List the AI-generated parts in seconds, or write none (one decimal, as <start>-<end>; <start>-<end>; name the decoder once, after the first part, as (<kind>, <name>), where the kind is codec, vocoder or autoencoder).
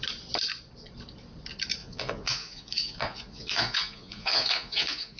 1.8-5.2 (vocoder, Vocos)